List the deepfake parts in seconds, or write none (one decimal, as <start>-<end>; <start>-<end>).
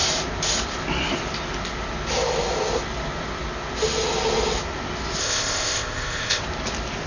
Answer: 5.2-6.4